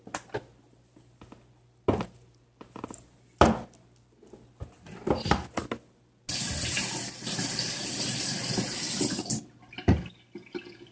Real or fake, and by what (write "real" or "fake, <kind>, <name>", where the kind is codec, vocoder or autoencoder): real